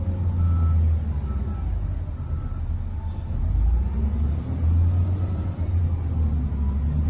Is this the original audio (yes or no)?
yes